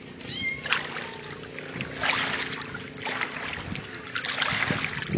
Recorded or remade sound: recorded